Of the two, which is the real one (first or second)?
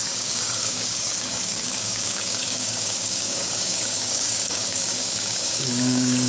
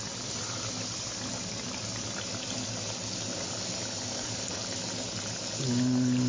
second